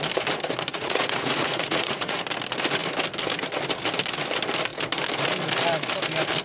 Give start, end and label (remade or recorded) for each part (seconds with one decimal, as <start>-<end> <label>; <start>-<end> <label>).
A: 0.0-0.7 recorded; 0.7-2.2 remade; 2.2-6.4 recorded